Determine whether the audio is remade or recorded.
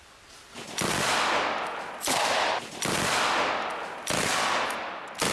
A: recorded